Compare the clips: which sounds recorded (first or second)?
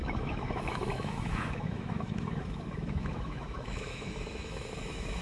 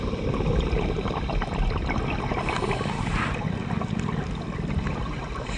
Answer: second